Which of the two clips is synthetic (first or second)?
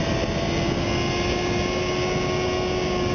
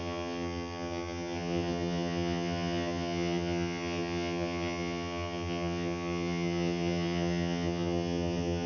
second